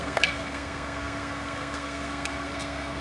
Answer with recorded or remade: remade